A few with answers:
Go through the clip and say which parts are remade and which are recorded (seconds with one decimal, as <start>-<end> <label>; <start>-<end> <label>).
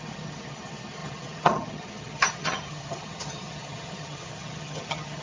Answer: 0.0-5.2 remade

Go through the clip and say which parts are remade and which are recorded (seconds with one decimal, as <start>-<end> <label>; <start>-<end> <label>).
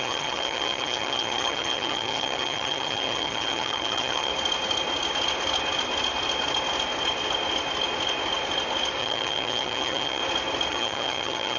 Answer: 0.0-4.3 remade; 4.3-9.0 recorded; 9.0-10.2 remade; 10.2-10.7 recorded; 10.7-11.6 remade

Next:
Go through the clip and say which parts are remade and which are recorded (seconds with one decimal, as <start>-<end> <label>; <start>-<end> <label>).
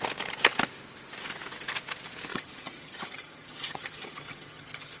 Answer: 0.0-2.3 recorded; 2.3-5.0 remade